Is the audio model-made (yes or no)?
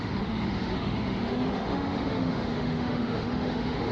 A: yes